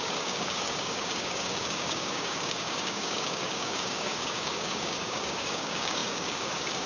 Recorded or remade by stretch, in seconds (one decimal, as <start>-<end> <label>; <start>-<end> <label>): 0.0-6.9 remade